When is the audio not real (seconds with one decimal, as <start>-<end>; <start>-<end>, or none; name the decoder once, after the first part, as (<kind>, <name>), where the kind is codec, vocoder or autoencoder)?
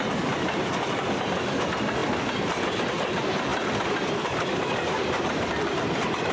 0.0-2.0 (vocoder, BigVGAN v2); 2.9-6.3